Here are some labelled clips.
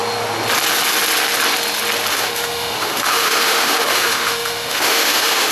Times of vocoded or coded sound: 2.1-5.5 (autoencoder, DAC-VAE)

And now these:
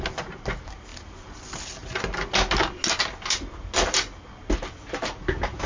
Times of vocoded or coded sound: none

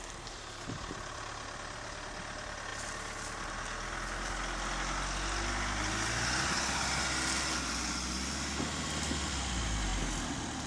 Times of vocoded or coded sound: none

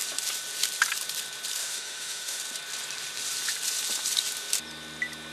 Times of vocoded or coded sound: 1.6-2.4 (autoencoder, DAC-VAE)

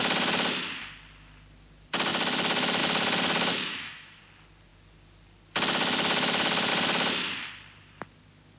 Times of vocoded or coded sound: 3.5-4.2 (autoencoder, DAC-VAE)

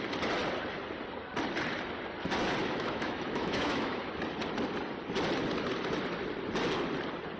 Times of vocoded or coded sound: 2.6-4.1 (autoencoder, DAC-VAE)

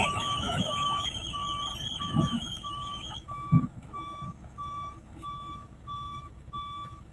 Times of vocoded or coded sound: 0.0-1.4 (autoencoder, DAC-VAE); 2.0-7.1